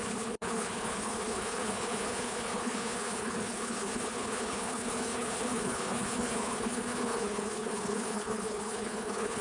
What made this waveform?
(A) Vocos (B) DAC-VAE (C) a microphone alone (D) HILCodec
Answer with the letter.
D